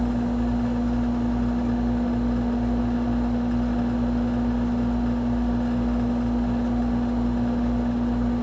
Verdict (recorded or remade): recorded